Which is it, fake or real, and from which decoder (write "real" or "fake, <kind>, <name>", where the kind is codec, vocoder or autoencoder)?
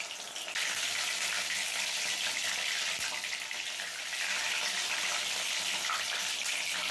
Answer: real